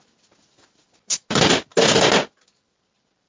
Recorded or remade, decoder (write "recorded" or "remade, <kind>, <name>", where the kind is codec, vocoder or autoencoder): recorded